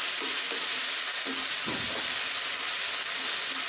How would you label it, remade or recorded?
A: recorded